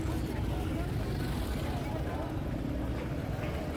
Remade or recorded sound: recorded